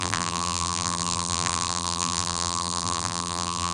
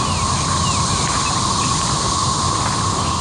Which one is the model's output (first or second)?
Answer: first